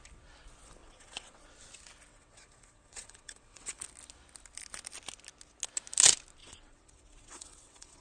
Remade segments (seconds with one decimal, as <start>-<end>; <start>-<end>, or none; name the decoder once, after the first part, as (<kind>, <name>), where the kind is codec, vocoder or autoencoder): 0.8-1.4 (vocoder, WaveNeXt); 2.1-3.8; 6.4-8.0